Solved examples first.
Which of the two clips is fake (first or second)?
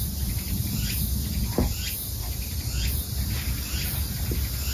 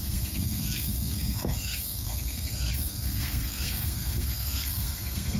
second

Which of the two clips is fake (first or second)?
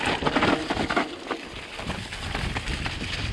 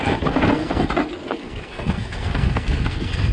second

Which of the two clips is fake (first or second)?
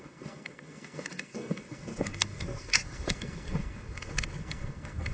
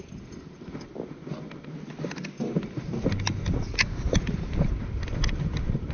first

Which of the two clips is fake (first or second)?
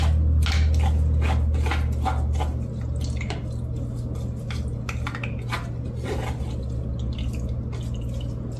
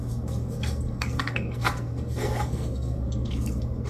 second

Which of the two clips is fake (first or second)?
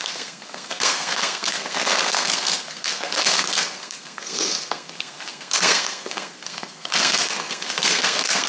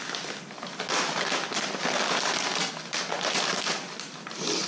first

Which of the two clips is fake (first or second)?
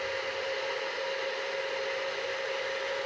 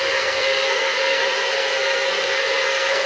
second